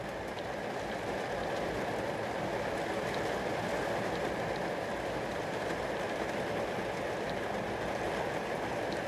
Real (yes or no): yes